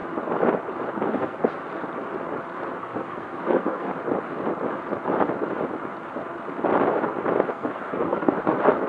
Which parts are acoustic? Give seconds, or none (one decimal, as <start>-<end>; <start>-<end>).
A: 0.0-0.9; 1.6-2.8; 3.9-7.5